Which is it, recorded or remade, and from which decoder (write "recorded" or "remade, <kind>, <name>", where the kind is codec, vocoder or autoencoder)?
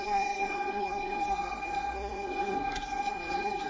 remade, codec, SNAC